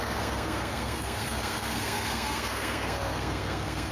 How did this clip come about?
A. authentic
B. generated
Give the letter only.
B